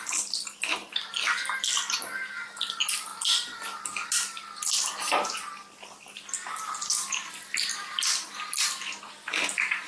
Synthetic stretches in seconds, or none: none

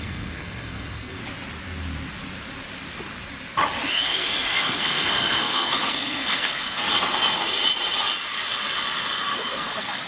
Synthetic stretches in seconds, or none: 0.0-1.2 (codec, SNAC); 3.9-6.9; 9.3-10.1

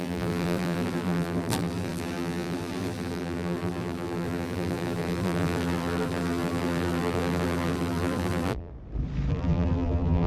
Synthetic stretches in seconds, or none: 0.0-8.7 (vocoder, BigVGAN v2); 9.3-10.3

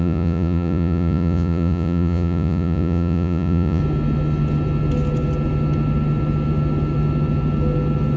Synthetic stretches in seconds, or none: 0.0-3.8 (vocoder, Vocos)

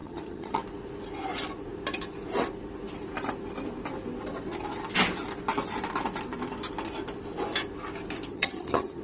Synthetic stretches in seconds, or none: 0.0-0.6 (vocoder, HiFi-GAN); 8.3-9.0

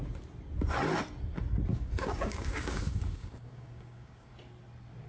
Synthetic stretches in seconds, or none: 1.7-4.3 (codec, DAC)

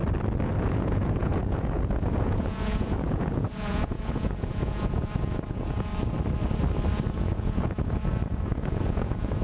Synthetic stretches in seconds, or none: 0.6-5.9 (vocoder, Vocos); 7.1-9.4

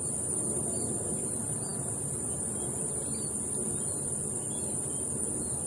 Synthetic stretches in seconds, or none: none